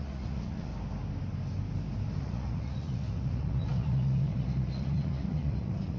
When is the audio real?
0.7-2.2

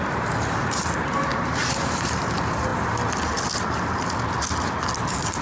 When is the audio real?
0.0-1.3; 2.3-5.4

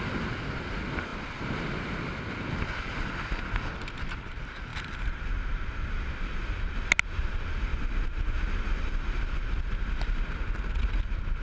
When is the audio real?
0.0-4.7; 6.1-11.4

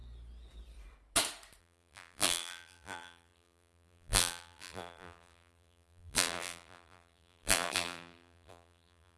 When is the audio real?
0.0-1.6

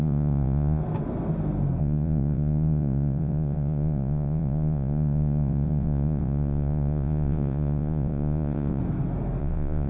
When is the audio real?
0.8-1.8; 8.8-9.4